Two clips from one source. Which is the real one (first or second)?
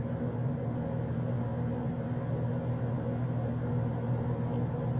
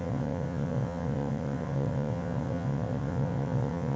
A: first